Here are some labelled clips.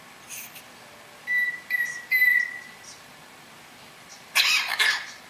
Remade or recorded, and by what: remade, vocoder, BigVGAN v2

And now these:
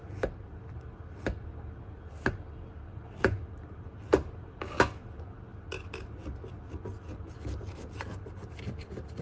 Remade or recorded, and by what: recorded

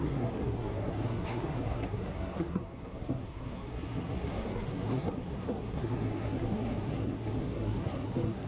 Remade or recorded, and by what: remade, codec, SNAC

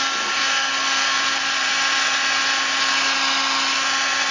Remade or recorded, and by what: recorded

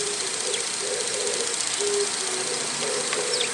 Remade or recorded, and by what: recorded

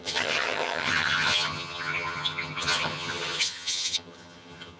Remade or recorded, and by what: remade, vocoder, HiFi-GAN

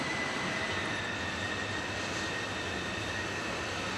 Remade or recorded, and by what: recorded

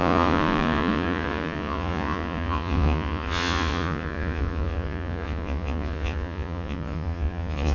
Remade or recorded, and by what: remade, vocoder, Vocos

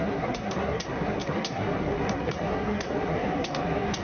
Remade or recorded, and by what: remade, codec, SNAC